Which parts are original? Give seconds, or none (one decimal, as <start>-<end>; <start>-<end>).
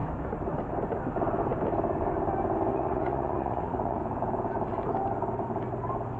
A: 0.0-2.7; 4.0-6.2